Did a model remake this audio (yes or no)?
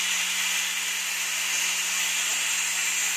no